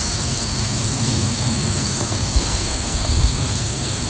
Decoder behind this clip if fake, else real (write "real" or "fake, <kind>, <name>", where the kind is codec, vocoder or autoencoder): fake, codec, SNAC